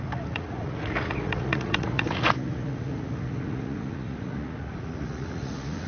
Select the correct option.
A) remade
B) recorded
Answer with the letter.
A